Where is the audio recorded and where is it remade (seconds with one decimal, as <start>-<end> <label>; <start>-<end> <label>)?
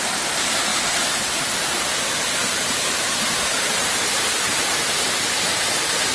0.0-0.7 remade; 0.7-1.6 recorded; 1.6-6.1 remade